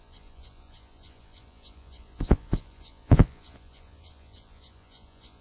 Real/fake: fake